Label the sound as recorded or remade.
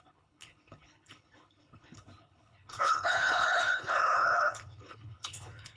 remade